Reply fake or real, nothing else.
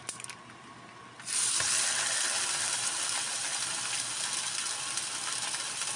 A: real